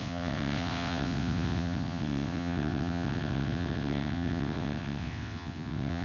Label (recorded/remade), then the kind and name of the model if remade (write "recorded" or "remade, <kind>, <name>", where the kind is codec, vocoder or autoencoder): remade, vocoder, WaveNeXt